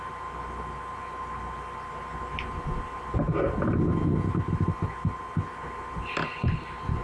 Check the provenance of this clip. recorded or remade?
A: recorded